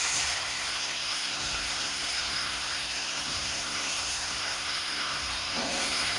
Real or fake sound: fake